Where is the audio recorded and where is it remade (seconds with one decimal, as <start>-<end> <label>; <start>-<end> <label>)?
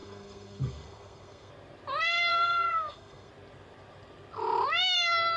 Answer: 0.0-1.5 remade; 1.5-2.3 recorded; 2.3-3.3 remade; 3.3-5.4 recorded